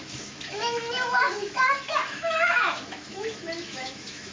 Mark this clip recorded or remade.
remade